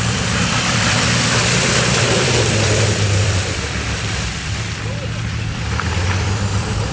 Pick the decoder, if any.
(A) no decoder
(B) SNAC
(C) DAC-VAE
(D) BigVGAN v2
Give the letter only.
D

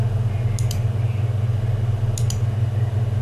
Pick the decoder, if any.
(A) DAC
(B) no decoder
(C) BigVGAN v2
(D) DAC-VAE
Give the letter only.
B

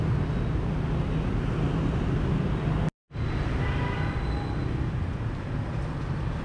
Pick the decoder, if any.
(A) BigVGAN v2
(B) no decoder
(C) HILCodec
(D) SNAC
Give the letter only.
B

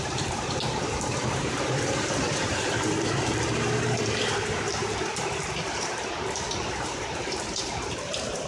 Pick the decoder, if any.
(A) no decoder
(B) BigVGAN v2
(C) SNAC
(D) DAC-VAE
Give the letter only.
B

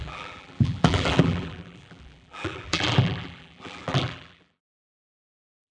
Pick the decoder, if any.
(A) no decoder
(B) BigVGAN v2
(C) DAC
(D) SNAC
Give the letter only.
B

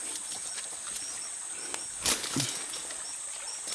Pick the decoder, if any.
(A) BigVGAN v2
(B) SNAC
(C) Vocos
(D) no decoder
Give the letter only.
D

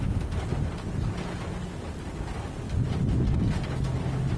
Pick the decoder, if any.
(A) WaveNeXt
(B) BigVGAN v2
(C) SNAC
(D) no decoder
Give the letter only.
D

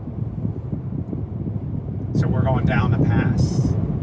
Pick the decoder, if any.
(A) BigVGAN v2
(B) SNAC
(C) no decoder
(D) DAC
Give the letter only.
C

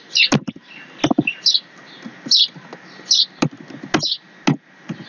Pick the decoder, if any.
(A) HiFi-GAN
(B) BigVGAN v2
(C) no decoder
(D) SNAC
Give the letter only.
C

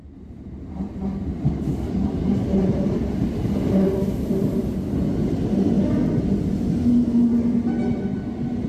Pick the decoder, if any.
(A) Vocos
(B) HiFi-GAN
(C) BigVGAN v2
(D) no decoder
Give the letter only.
D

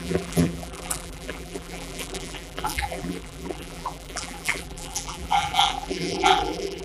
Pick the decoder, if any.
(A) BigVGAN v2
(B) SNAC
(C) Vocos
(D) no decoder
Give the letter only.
A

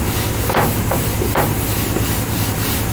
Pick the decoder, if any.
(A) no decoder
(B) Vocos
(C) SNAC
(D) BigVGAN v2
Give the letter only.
A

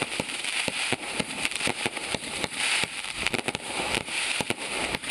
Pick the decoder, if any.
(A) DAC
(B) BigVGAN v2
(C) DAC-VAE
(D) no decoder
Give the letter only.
B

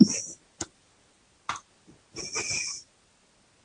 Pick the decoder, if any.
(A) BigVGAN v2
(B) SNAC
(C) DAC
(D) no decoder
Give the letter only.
D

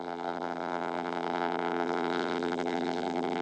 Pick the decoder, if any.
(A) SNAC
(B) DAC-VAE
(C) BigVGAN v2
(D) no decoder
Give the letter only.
C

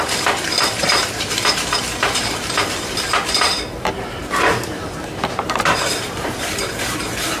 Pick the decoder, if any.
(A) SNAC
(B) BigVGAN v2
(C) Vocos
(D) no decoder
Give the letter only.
B